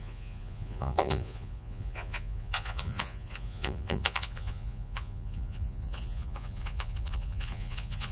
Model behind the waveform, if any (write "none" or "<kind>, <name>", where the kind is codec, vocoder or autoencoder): vocoder, Vocos